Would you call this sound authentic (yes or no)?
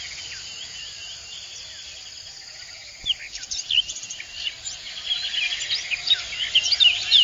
yes